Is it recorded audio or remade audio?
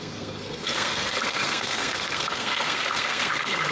remade